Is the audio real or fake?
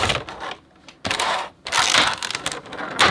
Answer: real